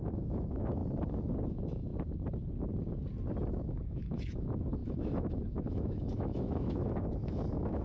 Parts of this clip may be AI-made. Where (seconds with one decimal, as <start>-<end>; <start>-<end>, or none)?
0.0-0.8; 1.5-1.9; 3.5-7.8